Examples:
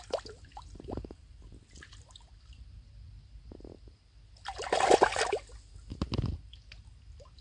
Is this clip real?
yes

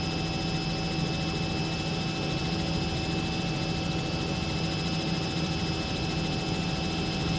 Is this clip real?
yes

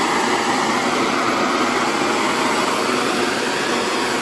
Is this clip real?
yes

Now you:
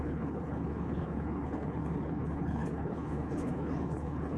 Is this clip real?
no